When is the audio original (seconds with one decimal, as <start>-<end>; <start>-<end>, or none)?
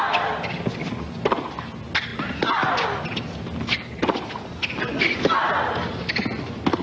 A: 0.0-6.8